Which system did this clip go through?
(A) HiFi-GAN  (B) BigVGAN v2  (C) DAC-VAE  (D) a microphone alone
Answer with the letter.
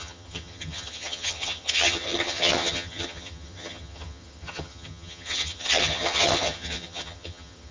A